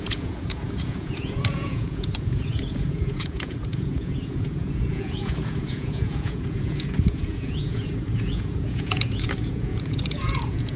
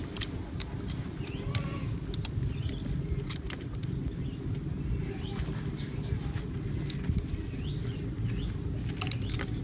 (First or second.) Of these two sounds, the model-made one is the first